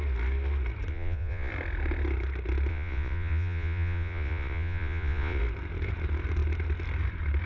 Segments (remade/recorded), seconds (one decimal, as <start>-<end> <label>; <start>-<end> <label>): 0.0-0.9 recorded; 0.9-1.5 remade; 1.5-2.7 recorded; 2.7-5.4 remade; 5.4-7.5 recorded